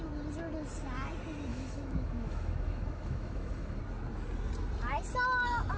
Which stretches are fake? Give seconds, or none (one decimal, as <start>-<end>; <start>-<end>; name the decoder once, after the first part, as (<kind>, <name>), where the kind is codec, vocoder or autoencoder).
1.5-3.8 (autoencoder, DAC-VAE)